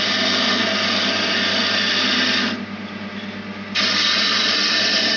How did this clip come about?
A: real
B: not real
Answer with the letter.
A